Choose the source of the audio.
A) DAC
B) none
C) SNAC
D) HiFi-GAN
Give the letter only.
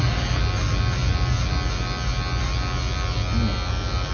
B